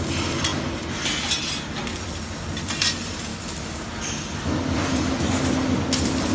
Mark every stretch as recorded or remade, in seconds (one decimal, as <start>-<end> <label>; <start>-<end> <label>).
0.0-6.3 recorded